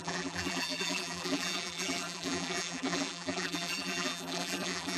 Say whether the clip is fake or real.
fake